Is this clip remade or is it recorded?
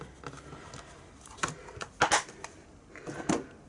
recorded